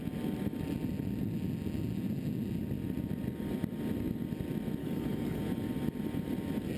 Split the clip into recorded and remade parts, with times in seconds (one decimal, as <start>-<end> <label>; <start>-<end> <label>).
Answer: 0.0-4.8 recorded; 4.8-5.4 remade; 5.4-6.8 recorded